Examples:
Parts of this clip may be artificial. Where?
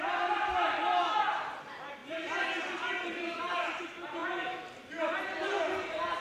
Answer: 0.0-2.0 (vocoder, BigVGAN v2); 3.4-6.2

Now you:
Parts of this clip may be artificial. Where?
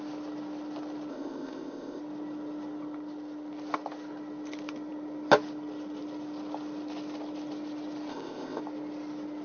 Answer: 1.1-2.0 (codec, ZipCodec); 8.1-8.6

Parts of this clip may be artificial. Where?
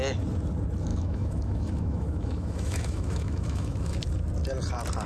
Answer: 0.9-4.0 (autoencoder, DAC-VAE)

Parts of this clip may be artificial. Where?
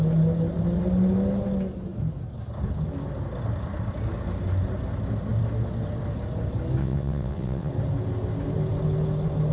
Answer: 6.8-7.7 (vocoder, WaveNeXt)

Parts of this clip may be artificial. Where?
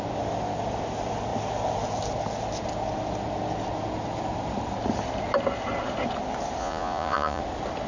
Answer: 6.6-7.4 (vocoder, Vocos)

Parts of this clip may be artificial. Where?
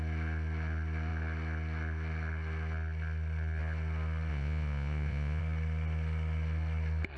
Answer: 4.3-5.4 (vocoder, Vocos)